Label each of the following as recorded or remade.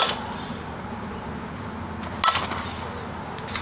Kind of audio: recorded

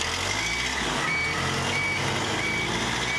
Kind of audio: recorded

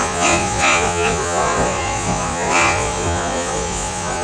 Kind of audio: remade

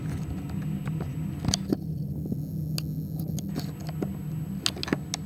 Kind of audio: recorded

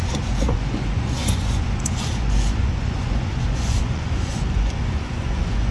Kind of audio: remade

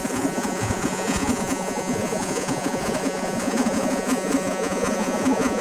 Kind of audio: remade